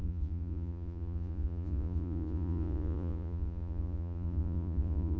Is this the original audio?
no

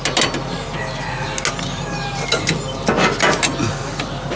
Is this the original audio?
yes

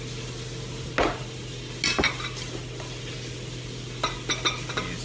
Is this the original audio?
yes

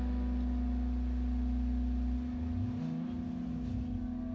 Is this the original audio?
yes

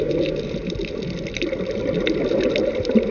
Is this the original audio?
yes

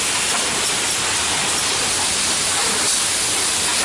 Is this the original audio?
yes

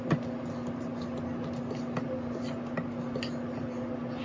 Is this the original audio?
yes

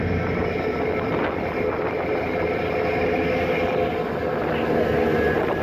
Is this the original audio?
yes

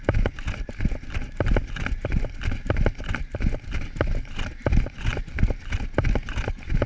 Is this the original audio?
yes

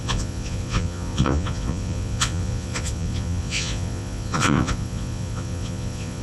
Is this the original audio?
no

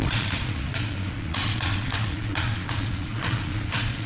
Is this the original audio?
no